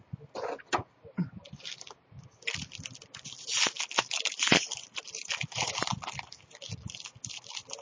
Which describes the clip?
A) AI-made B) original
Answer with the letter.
B